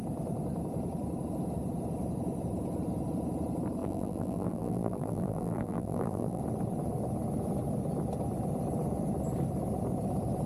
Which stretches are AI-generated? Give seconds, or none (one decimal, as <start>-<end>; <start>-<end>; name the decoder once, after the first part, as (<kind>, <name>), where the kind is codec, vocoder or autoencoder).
3.8-6.4 (vocoder, BigVGAN v2)